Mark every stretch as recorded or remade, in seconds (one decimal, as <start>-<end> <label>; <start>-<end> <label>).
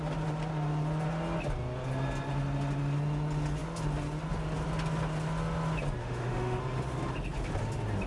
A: 0.0-6.0 recorded; 6.0-6.6 remade; 6.6-8.1 recorded